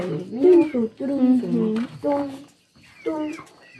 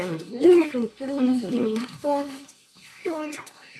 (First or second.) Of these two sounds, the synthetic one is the second